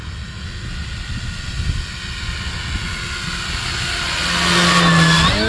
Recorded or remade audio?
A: recorded